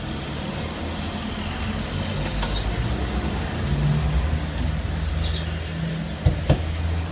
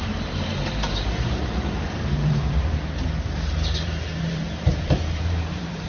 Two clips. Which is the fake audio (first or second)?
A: second